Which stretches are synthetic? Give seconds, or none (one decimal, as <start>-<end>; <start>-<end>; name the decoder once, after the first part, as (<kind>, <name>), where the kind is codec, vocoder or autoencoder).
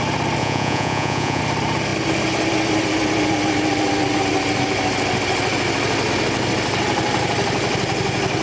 0.4-1.4 (vocoder, Vocos)